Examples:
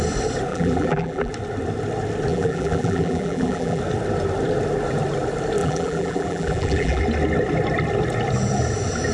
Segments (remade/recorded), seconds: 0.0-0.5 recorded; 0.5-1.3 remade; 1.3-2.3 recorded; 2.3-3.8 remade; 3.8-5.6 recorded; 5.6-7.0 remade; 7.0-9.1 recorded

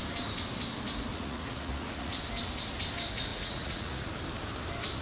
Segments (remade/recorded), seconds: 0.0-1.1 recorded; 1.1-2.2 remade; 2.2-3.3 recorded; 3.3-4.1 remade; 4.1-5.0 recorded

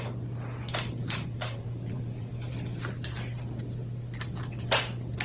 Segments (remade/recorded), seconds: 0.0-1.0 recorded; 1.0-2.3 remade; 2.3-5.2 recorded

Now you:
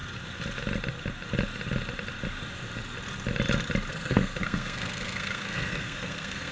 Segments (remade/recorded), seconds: 0.0-3.9 recorded; 3.9-6.5 remade

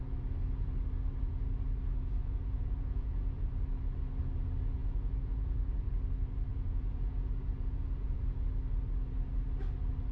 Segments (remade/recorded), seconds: 0.0-2.2 recorded; 2.2-3.4 remade; 3.4-4.8 recorded; 4.8-5.9 remade; 5.9-6.5 recorded; 6.5-8.2 remade; 8.2-10.1 recorded

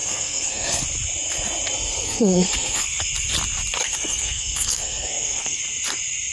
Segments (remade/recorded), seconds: 0.0-0.8 remade; 0.8-1.9 recorded; 1.9-3.0 remade; 3.0-3.8 recorded; 3.8-5.6 remade; 5.6-6.3 recorded

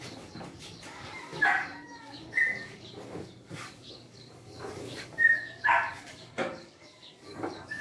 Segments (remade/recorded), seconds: 0.0-7.8 remade